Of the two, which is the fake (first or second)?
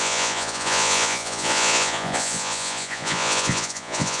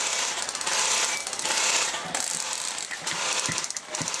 first